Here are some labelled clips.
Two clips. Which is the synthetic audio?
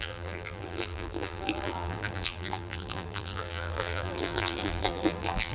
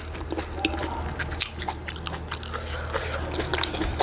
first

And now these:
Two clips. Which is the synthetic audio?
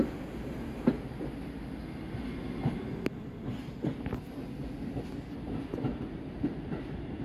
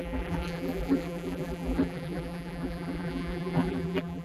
second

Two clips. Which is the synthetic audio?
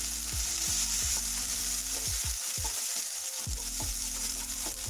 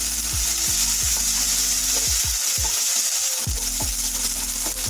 first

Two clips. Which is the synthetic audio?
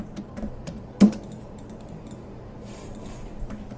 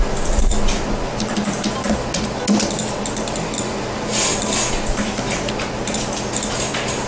first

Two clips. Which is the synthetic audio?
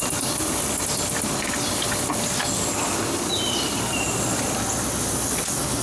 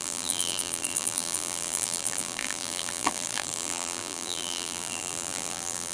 second